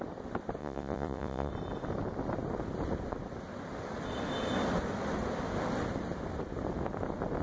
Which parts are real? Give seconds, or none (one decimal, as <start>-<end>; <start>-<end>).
0.0-0.6; 1.5-7.4